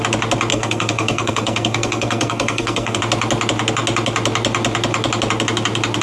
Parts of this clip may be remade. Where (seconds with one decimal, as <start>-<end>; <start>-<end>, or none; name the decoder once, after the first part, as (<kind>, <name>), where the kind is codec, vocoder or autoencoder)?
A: 0.5-3.0 (codec, SNAC)